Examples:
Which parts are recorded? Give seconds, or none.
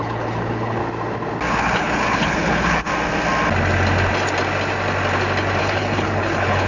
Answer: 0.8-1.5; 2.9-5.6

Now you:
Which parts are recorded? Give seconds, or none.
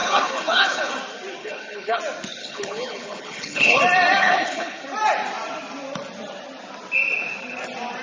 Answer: 0.9-1.4; 2.0-2.4; 3.8-4.2; 4.8-8.0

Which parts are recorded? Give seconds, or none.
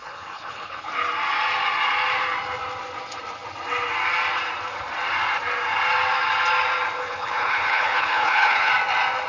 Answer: 0.9-7.0; 8.7-9.3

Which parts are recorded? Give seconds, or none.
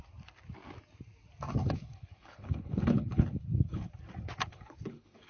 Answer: 0.0-1.6; 3.9-4.5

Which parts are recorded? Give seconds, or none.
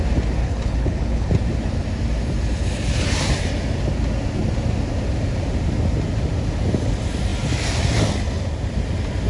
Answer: 0.0-0.4; 1.3-9.3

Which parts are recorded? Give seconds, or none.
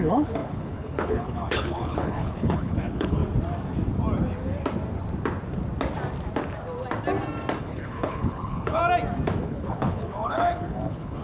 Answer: 3.2-7.6; 8.8-9.4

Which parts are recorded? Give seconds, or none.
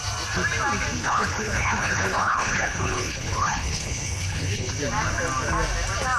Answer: 0.0-1.0; 4.7-6.2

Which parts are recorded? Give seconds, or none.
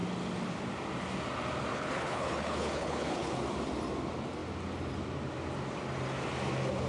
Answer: 0.0-1.7; 3.3-6.9